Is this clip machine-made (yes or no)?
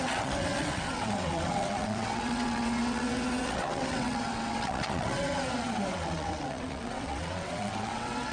yes